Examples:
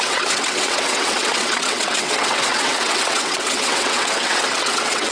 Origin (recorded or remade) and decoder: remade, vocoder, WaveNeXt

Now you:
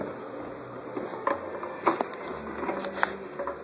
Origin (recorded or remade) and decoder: recorded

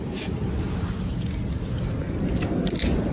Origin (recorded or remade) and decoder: recorded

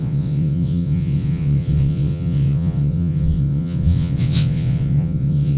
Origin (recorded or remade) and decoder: remade, vocoder, WaveNeXt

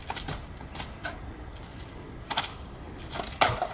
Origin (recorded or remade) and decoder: recorded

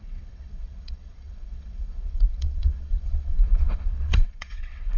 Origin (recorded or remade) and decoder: remade, vocoder, WaveNeXt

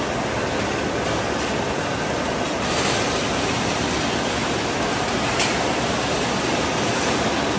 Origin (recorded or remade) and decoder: recorded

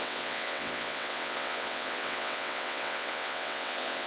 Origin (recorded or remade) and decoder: remade, vocoder, WaveNeXt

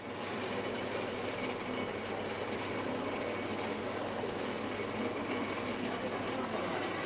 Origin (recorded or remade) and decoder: recorded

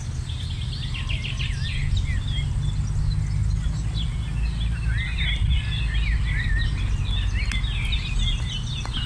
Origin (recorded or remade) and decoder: recorded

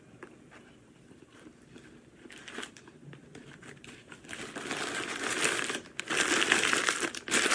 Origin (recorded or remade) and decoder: recorded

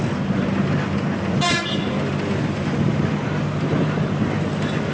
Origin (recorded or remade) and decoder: recorded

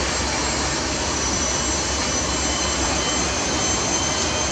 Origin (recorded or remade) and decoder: recorded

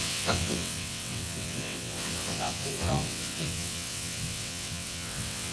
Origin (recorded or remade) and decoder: remade, vocoder, WaveNeXt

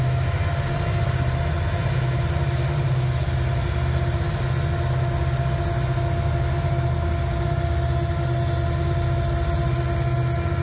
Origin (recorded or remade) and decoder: recorded